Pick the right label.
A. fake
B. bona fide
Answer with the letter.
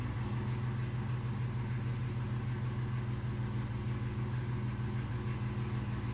B